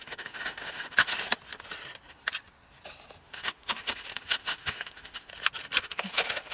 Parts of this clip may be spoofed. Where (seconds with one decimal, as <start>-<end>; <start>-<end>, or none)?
0.0-1.1; 3.2-5.3; 5.8-6.5